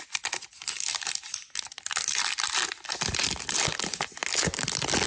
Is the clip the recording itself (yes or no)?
yes